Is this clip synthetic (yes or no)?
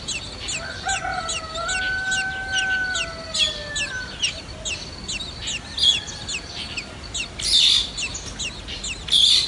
no